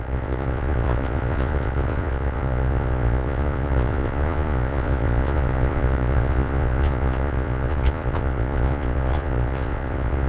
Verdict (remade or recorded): remade